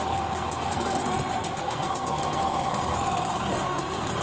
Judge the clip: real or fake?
fake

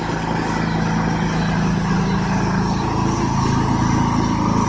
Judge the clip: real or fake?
real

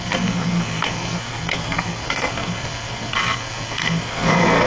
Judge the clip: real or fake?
fake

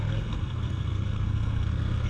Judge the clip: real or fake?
fake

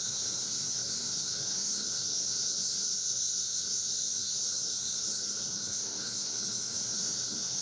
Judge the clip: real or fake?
fake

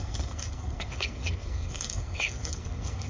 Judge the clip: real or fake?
fake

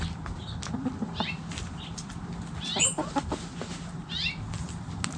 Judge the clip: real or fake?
real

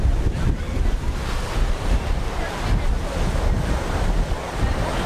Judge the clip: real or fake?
real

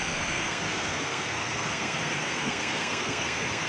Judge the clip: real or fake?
fake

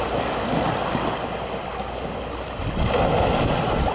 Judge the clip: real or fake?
real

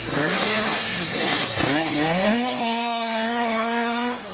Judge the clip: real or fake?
fake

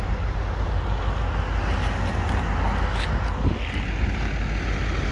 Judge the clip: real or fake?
real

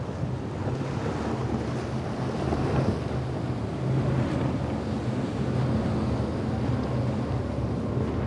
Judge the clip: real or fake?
real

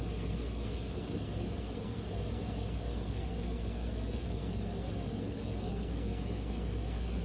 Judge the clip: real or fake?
fake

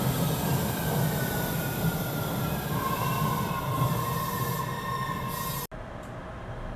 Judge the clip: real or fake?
real